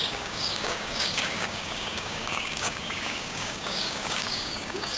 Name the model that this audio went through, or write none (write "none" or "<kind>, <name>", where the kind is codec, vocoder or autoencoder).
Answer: codec, DAC